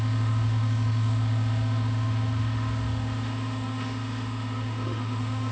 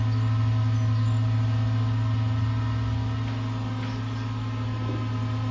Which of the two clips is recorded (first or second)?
second